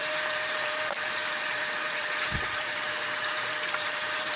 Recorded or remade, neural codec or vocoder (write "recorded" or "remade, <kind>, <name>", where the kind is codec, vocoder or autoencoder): remade, vocoder, BigVGAN v2